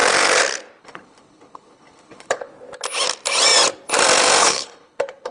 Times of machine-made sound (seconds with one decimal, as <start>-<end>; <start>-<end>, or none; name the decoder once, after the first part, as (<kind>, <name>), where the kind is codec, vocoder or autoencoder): 0.8-2.5 (codec, HILCodec); 4.4-5.3